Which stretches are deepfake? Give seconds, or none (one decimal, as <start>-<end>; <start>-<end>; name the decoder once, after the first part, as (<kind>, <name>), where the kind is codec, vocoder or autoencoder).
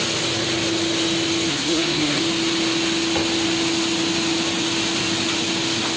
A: 1.5-2.2 (codec, SNAC)